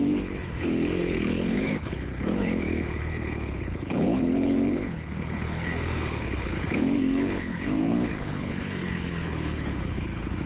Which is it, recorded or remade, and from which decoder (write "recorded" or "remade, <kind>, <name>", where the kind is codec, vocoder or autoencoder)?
remade, codec, HILCodec